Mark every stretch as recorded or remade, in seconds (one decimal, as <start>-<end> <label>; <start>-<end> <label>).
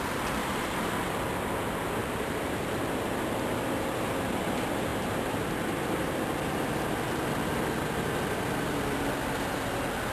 0.0-0.4 recorded; 0.4-0.9 remade; 0.9-2.0 recorded; 2.0-2.8 remade; 2.8-4.9 recorded; 4.9-5.5 remade; 5.5-10.1 recorded